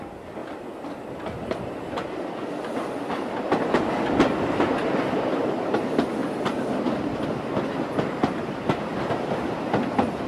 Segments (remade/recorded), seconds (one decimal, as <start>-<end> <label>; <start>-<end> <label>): 0.0-10.3 recorded